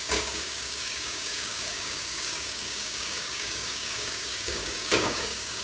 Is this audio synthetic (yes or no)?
yes